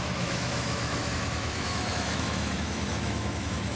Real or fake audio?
fake